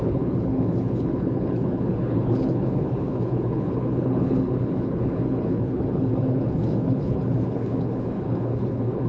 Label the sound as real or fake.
fake